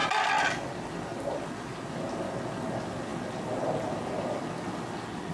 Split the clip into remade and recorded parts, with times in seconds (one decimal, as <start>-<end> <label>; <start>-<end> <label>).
0.0-5.3 recorded